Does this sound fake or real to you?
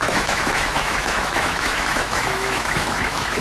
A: fake